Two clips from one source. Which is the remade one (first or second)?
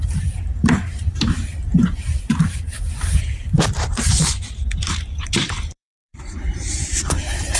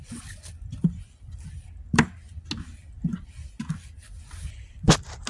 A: first